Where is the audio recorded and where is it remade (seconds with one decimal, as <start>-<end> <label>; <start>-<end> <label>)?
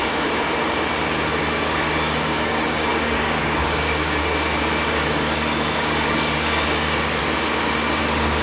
0.0-1.4 recorded; 1.4-4.2 remade; 4.2-4.9 recorded; 4.9-7.2 remade; 7.2-8.0 recorded; 8.0-8.4 remade